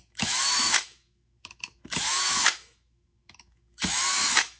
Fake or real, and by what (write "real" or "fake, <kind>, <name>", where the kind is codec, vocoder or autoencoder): fake, autoencoder, DAC-VAE